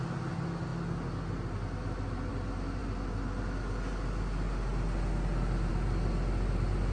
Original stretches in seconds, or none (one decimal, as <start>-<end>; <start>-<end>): 0.0-6.9